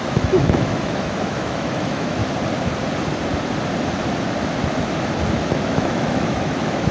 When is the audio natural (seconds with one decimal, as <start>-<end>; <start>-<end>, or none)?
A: 2.2-5.3